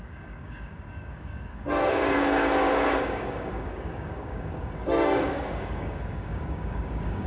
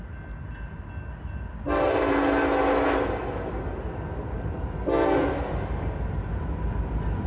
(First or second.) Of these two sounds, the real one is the second